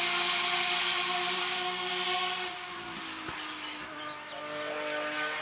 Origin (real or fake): real